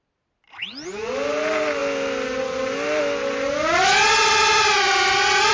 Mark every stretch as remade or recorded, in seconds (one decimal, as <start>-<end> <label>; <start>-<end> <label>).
0.0-5.5 recorded